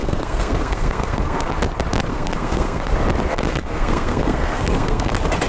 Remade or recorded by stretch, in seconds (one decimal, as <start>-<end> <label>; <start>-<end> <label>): 0.0-1.6 remade; 1.6-2.1 recorded; 2.1-2.9 remade; 2.9-3.3 recorded; 3.3-5.1 remade; 5.1-5.5 recorded